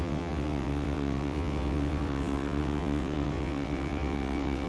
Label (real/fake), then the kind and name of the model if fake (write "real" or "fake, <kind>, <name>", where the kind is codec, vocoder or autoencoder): fake, vocoder, WaveNeXt